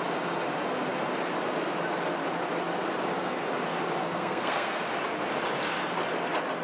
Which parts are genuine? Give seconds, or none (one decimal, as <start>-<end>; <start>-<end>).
0.0-4.0; 4.8-6.6